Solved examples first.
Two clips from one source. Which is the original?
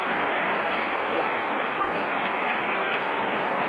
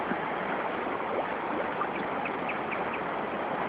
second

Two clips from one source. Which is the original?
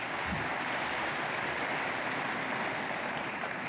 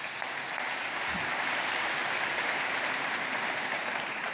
first